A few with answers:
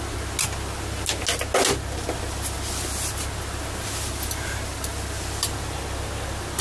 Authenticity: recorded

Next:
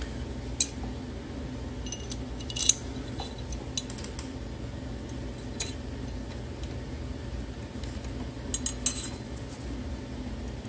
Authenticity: recorded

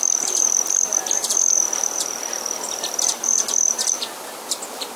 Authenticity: remade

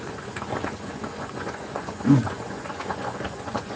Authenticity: remade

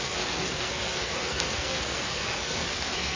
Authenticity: remade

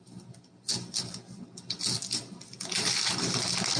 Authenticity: recorded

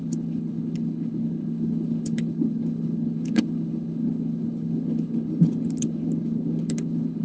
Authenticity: remade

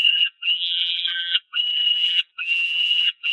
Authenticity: remade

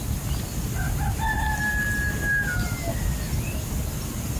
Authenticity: recorded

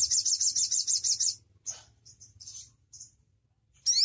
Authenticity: recorded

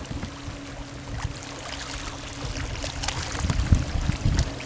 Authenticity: recorded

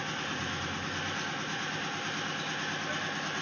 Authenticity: recorded